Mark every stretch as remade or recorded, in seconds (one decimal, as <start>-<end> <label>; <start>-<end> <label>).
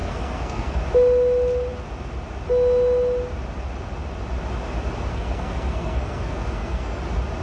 0.0-0.8 remade; 0.8-5.1 recorded; 5.1-7.0 remade; 7.0-7.4 recorded